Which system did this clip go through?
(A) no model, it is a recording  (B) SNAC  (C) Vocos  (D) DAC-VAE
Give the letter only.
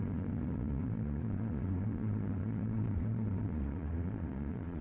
C